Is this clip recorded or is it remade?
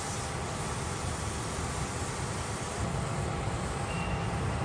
recorded